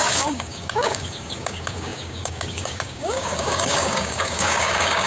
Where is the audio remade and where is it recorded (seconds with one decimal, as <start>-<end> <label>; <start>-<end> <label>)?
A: 0.0-5.1 remade